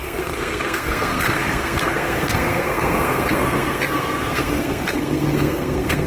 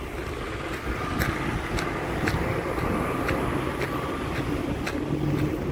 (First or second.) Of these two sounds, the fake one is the first